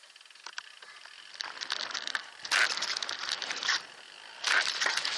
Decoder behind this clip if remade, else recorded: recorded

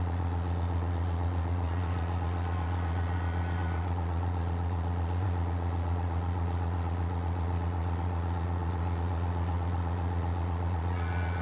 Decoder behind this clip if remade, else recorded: remade, vocoder, Vocos